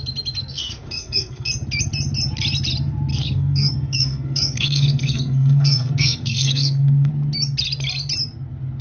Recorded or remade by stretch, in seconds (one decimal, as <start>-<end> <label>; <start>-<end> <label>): 0.0-0.4 recorded; 0.4-1.5 remade; 1.5-3.1 recorded; 3.1-7.1 remade; 7.1-8.8 recorded